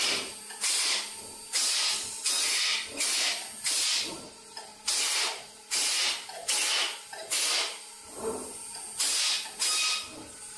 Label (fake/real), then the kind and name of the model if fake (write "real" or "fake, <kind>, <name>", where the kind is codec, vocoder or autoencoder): real